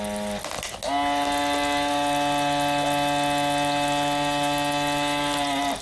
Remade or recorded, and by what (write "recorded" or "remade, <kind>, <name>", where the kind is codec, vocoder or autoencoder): recorded